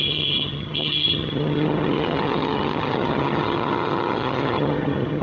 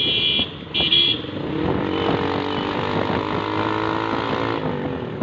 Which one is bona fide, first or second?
second